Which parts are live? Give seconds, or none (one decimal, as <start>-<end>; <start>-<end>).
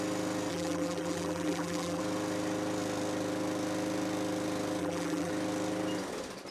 0.0-0.5; 2.0-4.8; 5.3-6.5